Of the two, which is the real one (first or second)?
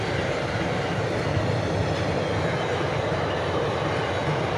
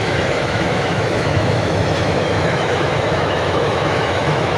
first